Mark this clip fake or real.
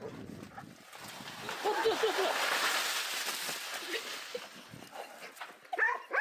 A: real